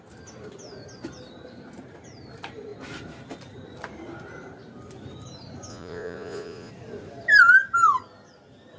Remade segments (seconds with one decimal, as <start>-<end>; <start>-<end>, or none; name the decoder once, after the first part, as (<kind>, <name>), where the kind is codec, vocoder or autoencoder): 5.7-6.7 (vocoder, Vocos)